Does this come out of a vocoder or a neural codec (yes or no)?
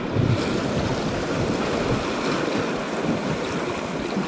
no